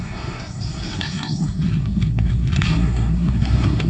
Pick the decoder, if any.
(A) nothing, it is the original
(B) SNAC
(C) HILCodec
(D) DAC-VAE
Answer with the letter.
B